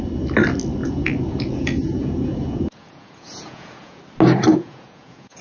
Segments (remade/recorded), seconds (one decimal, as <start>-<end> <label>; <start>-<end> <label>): 0.0-0.8 recorded; 0.8-4.0 remade; 4.0-4.5 recorded; 4.5-5.4 remade